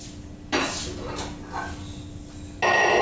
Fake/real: real